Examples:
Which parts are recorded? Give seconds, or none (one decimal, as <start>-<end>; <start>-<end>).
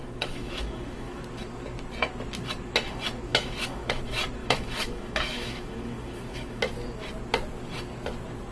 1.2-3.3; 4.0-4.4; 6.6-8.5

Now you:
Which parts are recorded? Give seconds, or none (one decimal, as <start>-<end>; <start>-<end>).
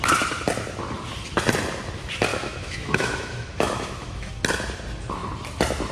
0.0-2.3; 4.3-5.9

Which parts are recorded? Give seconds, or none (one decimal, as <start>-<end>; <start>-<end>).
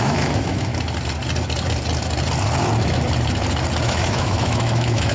0.7-3.8